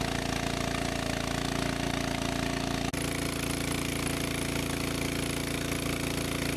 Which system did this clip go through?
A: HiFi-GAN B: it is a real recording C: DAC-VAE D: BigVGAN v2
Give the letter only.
B